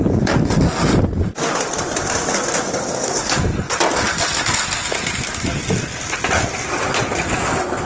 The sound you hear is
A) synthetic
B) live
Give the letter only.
B